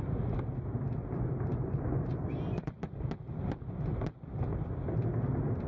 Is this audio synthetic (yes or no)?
no